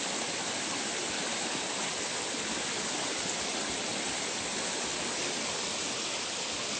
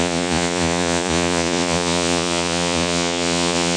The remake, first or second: second